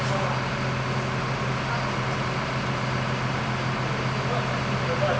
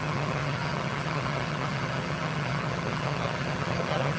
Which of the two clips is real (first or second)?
first